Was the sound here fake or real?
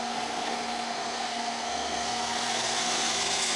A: fake